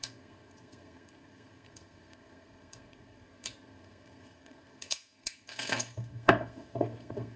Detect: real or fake fake